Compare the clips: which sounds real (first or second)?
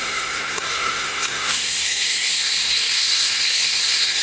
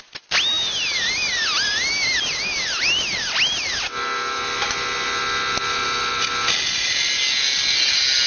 second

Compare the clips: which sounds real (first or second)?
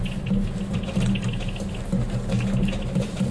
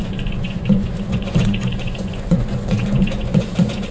first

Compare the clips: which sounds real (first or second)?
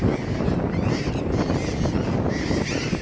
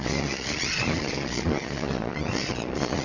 first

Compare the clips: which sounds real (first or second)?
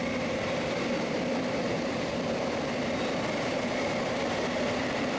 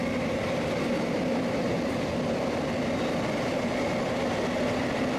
second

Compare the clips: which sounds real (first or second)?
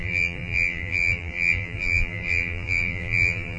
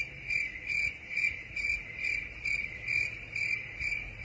second